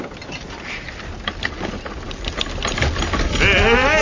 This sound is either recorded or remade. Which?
recorded